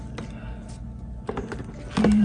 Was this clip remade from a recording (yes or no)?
no